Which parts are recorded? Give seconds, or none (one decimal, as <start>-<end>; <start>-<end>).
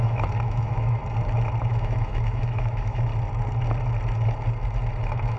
1.0-1.6; 3.1-5.0